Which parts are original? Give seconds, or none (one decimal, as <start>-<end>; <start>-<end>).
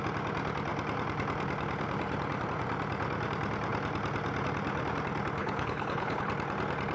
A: 0.0-5.4; 6.3-6.9